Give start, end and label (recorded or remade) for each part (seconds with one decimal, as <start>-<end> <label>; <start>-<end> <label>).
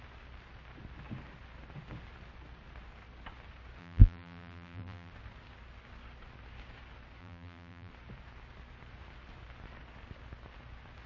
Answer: 0.0-3.8 recorded; 3.8-5.1 remade; 5.1-7.2 recorded; 7.2-7.9 remade; 7.9-11.1 recorded